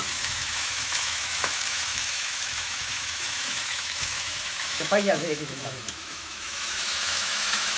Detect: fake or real fake